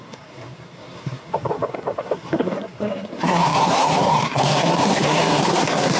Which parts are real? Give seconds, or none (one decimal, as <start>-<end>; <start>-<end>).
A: none

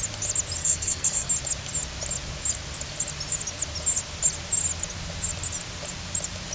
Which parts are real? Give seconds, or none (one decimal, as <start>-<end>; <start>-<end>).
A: 0.0-0.6; 1.3-6.5

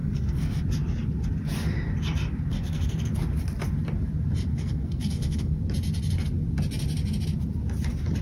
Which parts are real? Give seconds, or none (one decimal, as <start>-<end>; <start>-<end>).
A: 0.6-2.5; 3.1-4.5; 5.6-8.2

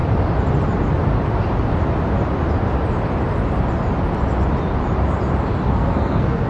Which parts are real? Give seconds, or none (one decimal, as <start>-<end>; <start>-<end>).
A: 0.0-5.7

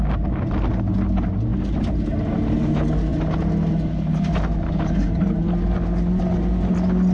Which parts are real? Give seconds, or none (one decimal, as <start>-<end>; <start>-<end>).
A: 0.0-7.1